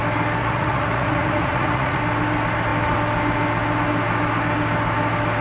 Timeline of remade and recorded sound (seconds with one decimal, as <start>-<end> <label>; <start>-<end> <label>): 0.0-0.4 recorded; 0.4-2.0 remade; 2.0-5.4 recorded